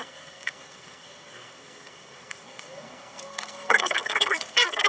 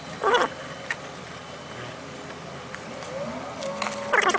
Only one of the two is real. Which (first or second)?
second